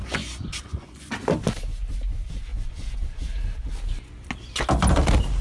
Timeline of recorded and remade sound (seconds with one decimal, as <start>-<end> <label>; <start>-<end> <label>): 0.0-1.1 remade; 1.1-2.5 recorded; 2.5-3.2 remade; 3.2-5.4 recorded